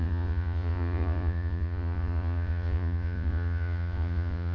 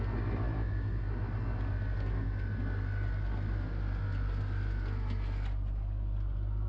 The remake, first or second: first